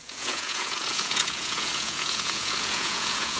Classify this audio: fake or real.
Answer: fake